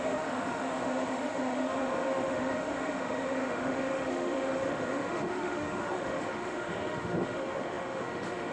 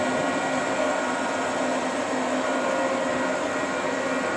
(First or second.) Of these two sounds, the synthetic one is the first